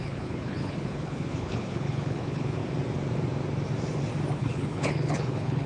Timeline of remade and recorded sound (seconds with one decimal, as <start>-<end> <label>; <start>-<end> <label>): 0.0-2.6 remade; 2.6-4.3 recorded; 4.3-5.7 remade